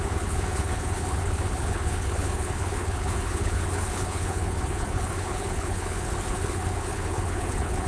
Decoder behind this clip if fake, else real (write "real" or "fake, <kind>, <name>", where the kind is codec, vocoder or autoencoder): fake, codec, HILCodec